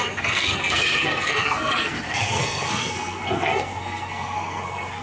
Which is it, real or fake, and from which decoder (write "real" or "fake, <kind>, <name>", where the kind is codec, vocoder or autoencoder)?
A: fake, codec, SNAC